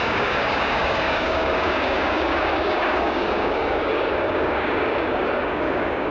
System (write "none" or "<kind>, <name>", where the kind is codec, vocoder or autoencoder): codec, DAC